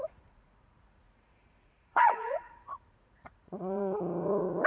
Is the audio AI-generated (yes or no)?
yes